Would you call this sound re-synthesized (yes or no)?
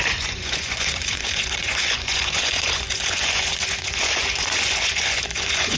yes